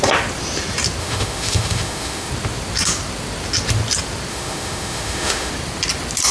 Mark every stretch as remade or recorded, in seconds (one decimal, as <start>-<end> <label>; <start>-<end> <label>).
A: 0.0-1.0 recorded; 1.0-2.3 remade; 2.3-4.3 recorded; 4.3-5.5 remade; 5.5-6.3 recorded